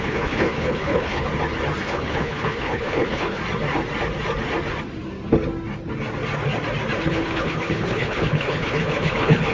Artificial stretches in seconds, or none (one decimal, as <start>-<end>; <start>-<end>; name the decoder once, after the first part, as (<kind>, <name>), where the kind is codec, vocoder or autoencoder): 0.0-1.3 (codec, HILCodec); 1.8-3.4; 7.0-9.5